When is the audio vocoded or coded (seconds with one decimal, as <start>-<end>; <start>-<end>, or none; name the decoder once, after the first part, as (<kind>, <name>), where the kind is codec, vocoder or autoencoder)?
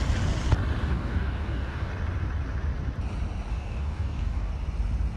0.8-1.9 (codec, DAC); 3.5-4.5